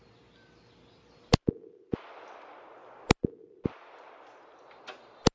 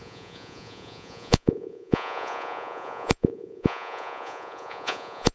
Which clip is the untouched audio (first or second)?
first